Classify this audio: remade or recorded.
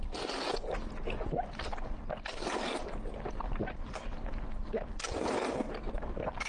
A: recorded